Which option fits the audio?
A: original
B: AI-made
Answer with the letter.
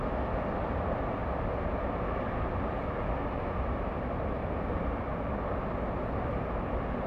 A